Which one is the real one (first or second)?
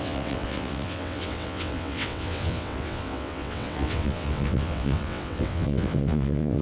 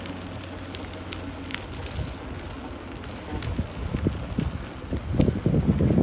second